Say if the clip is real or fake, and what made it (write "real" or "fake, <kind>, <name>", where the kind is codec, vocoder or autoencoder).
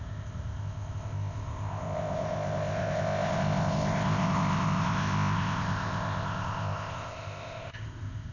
fake, codec, ZipCodec